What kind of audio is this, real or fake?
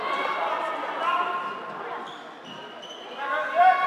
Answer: real